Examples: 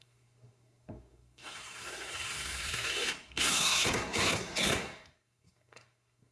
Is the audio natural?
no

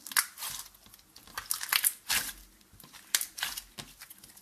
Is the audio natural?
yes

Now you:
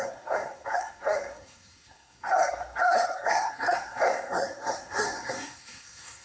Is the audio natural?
no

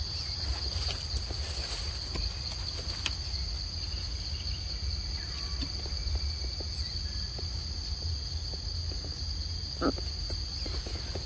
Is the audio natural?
yes